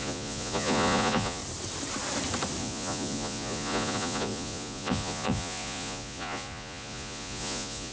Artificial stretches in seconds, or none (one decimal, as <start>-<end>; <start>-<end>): 0.0-1.4; 2.6-7.9